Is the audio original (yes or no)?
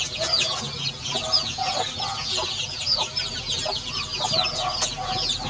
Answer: yes